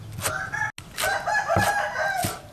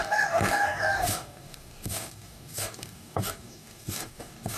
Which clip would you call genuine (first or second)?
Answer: first